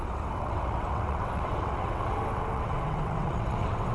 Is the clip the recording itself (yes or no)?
no